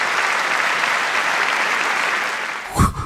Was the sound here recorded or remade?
recorded